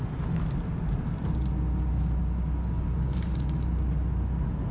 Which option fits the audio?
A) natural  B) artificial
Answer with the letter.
A